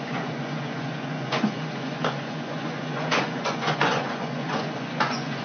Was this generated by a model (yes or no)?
yes